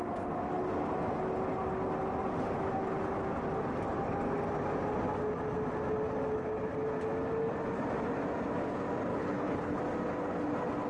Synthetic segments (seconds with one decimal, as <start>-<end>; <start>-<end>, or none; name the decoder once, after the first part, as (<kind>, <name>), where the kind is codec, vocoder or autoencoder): 9.1-9.8 (codec, HILCodec)